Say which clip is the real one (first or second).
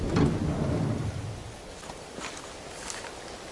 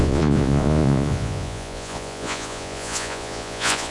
first